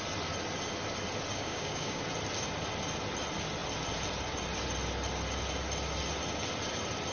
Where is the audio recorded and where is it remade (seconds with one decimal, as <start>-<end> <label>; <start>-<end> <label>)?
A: 0.0-1.3 recorded; 1.3-2.0 remade; 2.0-7.1 recorded